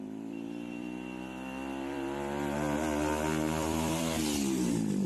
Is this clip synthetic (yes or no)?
yes